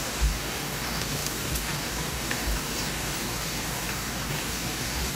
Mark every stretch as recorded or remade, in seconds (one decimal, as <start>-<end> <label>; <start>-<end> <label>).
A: 0.0-5.2 remade

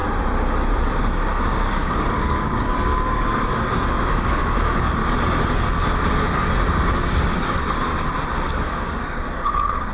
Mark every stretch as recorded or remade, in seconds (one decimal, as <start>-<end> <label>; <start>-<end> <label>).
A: 0.0-1.0 recorded; 1.0-5.0 remade; 5.0-6.1 recorded; 6.1-7.9 remade; 7.9-8.5 recorded; 8.5-9.9 remade